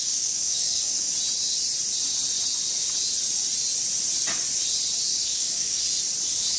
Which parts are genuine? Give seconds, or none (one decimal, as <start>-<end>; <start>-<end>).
0.9-5.1; 5.8-6.6